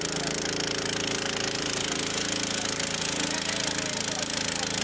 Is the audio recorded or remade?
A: recorded